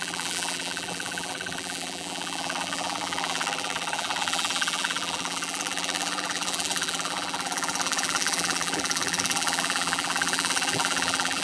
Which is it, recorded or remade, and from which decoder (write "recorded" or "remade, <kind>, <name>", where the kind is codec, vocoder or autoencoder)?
remade, vocoder, BigVGAN v2